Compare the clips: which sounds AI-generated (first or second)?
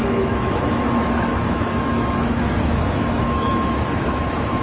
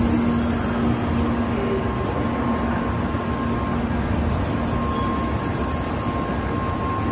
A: first